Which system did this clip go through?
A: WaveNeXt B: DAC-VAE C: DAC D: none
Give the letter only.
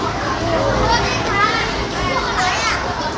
D